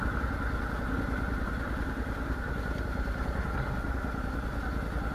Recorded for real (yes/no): yes